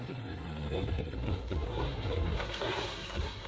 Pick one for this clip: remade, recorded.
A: remade